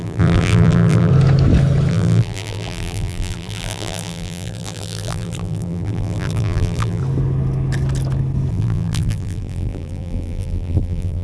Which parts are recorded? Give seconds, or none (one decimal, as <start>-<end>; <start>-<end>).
1.1-1.9; 7.0-8.5